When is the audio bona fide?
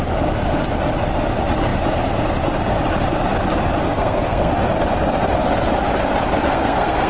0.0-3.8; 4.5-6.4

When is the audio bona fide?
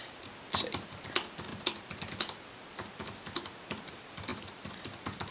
0.0-5.3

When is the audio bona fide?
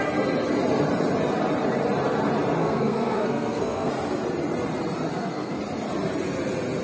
0.0-2.6; 3.9-5.1; 5.6-6.8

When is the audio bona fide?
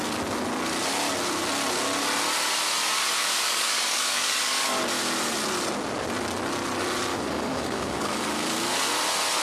0.0-3.2; 4.8-7.1; 8.9-9.4